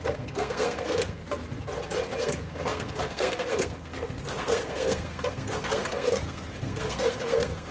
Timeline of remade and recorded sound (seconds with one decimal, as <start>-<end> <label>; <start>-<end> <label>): 0.0-1.2 remade; 1.2-2.2 recorded; 2.2-7.7 remade